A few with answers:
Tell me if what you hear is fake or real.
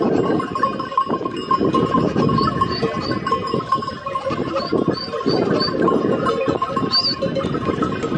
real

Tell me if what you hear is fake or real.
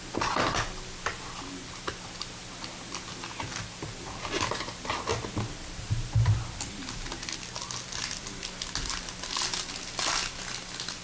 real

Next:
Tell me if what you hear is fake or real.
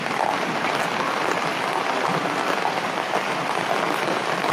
fake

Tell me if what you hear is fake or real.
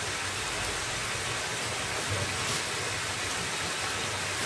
real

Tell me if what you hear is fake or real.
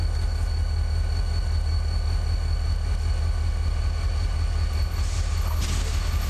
real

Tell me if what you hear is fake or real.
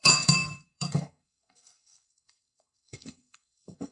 fake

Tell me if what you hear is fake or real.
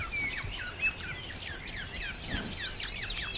real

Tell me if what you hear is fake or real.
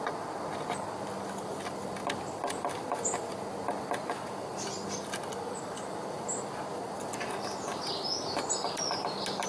real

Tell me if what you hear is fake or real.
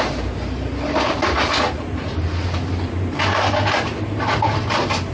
real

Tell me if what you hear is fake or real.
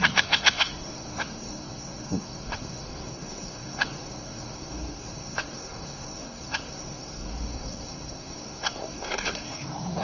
fake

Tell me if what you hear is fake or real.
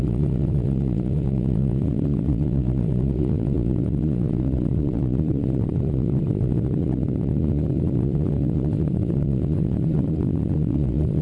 fake